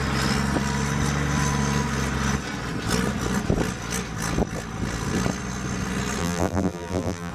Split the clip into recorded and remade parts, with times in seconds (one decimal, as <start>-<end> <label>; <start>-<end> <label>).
0.0-6.2 recorded; 6.2-7.3 remade